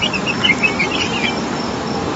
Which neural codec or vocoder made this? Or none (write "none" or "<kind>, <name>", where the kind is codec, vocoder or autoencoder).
none